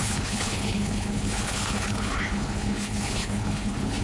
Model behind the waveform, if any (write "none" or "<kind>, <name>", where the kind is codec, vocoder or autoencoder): codec, HILCodec